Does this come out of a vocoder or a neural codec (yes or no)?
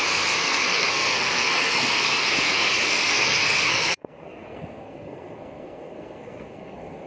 yes